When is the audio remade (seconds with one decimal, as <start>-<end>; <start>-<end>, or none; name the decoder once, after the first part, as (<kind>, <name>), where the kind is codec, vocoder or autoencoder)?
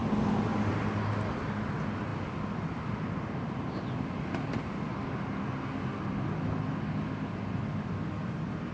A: none